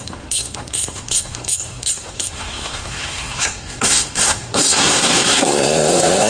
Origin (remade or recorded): remade